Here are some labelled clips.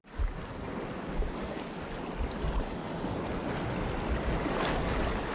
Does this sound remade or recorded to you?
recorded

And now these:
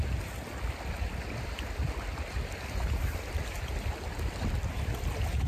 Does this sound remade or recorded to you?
recorded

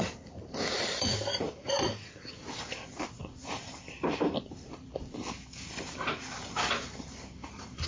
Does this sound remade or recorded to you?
remade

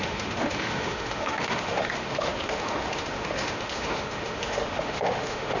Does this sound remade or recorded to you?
remade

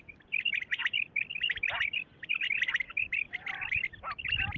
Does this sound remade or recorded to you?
recorded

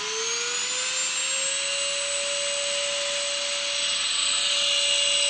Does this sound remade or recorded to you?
recorded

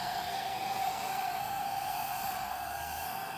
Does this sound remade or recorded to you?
remade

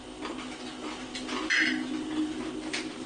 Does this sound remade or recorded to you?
recorded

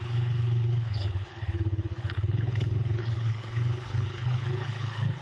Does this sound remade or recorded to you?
remade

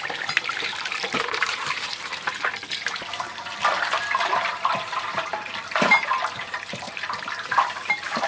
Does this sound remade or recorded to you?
remade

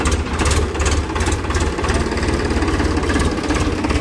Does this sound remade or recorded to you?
recorded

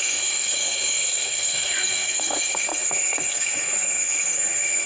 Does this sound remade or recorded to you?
remade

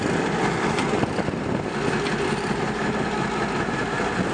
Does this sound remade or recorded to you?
recorded